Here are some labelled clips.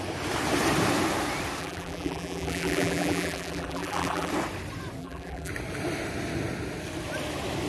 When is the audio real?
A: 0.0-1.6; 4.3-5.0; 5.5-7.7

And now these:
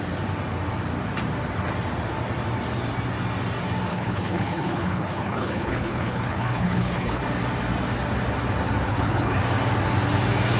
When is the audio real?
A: 0.0-3.9; 7.2-8.9; 9.4-10.6

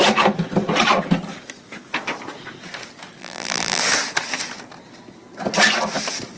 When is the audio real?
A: 0.0-3.2; 3.8-6.4

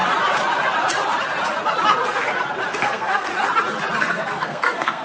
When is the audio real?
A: 0.0-2.7; 3.3-4.0